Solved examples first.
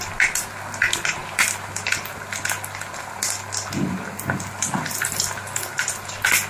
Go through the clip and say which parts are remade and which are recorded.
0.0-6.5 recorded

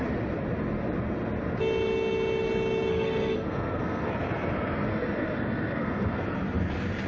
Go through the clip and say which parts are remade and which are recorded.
0.0-2.9 recorded; 2.9-4.1 remade; 4.1-4.9 recorded; 4.9-6.2 remade; 6.2-7.1 recorded

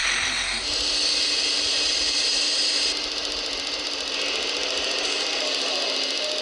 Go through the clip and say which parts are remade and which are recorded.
0.0-6.4 recorded